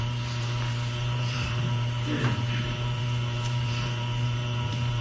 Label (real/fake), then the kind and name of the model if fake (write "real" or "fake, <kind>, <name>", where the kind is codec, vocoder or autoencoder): fake, vocoder, BigVGAN v2